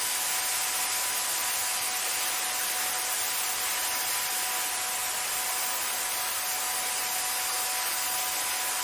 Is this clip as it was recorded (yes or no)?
yes